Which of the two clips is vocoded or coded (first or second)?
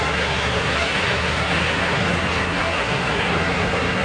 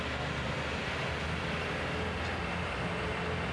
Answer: first